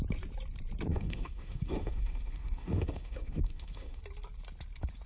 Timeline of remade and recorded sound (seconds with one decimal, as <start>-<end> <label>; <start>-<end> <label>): 0.0-0.9 recorded; 0.9-4.0 remade; 4.0-5.1 recorded

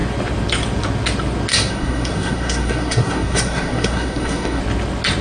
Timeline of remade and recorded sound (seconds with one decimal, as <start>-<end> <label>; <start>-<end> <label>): 0.0-1.5 recorded; 1.5-4.6 remade; 4.6-5.2 recorded

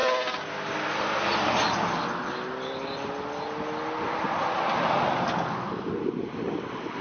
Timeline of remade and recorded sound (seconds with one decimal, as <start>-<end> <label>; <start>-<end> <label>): 0.0-7.0 recorded

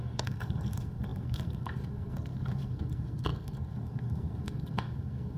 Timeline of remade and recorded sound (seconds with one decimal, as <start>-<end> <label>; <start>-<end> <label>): 0.0-5.4 remade

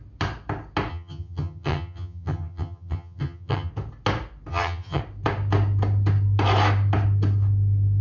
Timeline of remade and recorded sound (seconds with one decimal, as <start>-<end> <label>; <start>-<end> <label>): 0.0-0.9 recorded; 0.9-3.7 remade; 3.7-4.5 recorded; 4.5-5.0 remade; 5.0-8.0 recorded

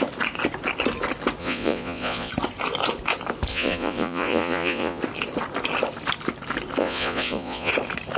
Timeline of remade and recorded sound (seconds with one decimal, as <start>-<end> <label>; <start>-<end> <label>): 0.0-1.4 recorded; 1.4-2.3 remade; 2.3-3.5 recorded; 3.5-5.0 remade; 5.0-6.8 recorded; 6.8-7.7 remade; 7.7-8.2 recorded

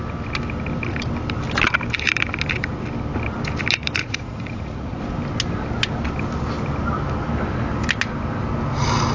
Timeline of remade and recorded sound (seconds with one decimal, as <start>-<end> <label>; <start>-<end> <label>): 0.0-4.0 recorded; 4.0-5.0 remade; 5.0-9.1 recorded

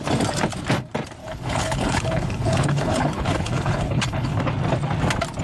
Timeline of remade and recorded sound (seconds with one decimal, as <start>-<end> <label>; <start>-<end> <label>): 0.0-1.2 recorded; 1.2-4.4 remade; 4.4-5.4 recorded